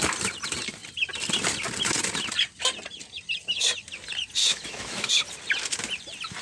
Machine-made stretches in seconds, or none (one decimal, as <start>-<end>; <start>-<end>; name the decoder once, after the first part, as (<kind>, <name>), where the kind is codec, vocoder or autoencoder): 4.4-5.1 (autoencoder, DAC-VAE)